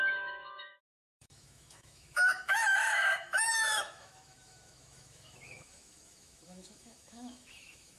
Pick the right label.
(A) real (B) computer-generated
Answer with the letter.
B